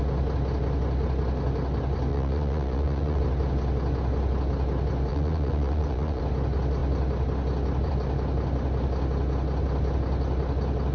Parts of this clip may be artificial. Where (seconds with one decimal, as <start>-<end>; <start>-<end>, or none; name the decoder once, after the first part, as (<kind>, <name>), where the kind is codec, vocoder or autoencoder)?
2.1-3.2 (vocoder, Vocos); 5.1-6.2

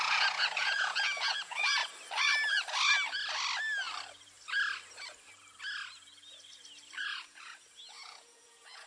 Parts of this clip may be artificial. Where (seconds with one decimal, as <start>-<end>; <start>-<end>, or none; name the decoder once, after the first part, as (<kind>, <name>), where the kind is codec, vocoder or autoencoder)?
0.0-1.8 (vocoder, Vocos); 7.0-8.9